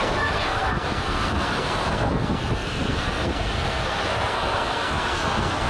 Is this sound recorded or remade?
remade